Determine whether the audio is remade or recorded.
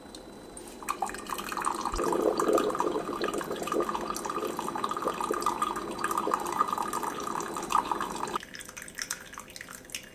recorded